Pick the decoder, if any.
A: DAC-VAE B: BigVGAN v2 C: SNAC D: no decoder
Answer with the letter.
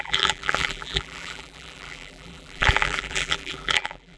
B